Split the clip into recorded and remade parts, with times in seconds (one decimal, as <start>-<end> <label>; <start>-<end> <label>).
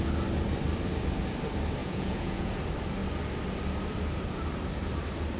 0.0-1.8 recorded; 1.8-2.5 remade; 2.5-5.4 recorded